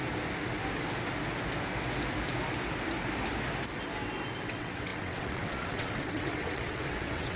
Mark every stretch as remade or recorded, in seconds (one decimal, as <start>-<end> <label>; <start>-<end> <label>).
0.0-4.4 recorded; 4.4-7.4 remade